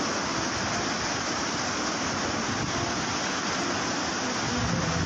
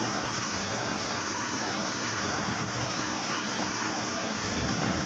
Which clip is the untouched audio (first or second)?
first